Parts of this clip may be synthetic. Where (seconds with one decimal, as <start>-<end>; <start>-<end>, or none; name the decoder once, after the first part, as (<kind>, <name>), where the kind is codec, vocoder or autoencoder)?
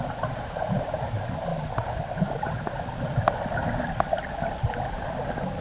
none